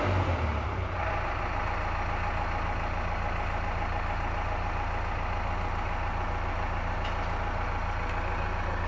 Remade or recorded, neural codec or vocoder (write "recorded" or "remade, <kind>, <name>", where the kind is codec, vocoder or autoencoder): recorded